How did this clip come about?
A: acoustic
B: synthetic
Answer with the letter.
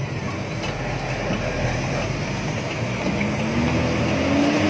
A